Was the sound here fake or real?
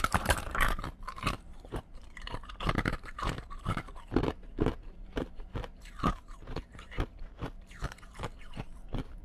fake